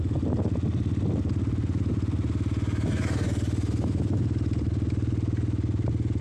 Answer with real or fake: real